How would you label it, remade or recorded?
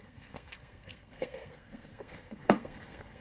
remade